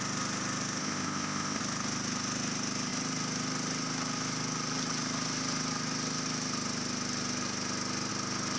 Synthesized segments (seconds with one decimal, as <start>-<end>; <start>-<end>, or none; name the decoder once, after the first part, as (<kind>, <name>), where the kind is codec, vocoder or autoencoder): 0.8-1.6 (codec, ZipCodec)